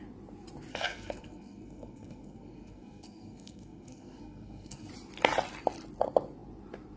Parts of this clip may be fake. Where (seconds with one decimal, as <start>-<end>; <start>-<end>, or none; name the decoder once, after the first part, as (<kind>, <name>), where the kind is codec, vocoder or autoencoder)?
0.7-4.9 (codec, SNAC)